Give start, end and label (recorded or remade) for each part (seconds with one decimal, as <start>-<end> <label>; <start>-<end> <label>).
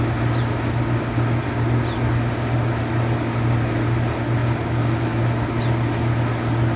0.0-6.8 recorded